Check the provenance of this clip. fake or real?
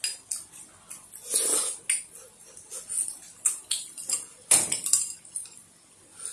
real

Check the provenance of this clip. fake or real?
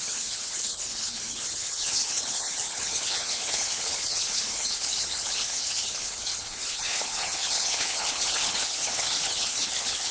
fake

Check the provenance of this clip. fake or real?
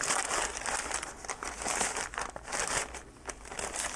real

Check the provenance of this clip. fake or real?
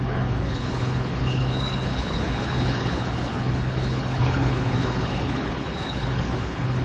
fake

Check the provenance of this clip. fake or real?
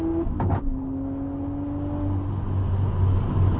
real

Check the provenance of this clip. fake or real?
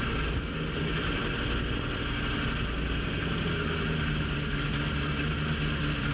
real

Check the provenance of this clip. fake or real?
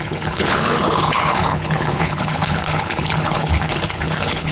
fake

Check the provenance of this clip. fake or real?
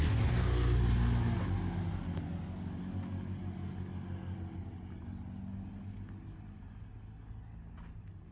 real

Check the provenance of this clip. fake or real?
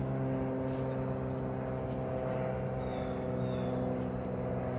real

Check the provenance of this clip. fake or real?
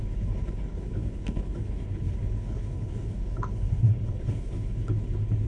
fake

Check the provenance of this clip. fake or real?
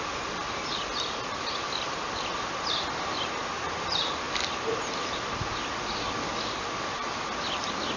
real